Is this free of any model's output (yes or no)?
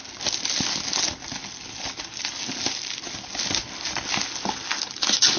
yes